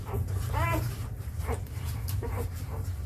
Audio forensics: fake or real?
fake